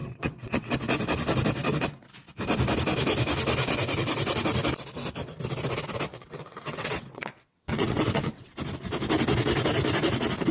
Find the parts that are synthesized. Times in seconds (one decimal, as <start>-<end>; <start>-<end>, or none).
0.0-0.7; 6.1-8.5